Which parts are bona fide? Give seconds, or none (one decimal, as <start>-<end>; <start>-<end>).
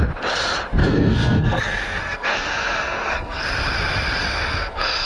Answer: 0.0-0.8; 3.4-4.2